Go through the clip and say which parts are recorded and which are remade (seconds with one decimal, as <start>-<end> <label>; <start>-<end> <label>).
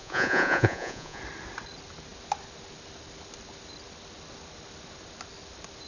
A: 0.0-1.2 remade; 1.2-5.9 recorded